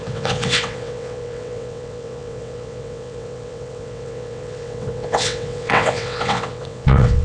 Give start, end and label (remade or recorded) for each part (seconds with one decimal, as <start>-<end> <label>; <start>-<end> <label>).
0.0-7.2 remade